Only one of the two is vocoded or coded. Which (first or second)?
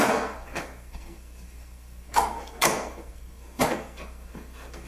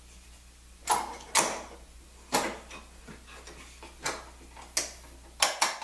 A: first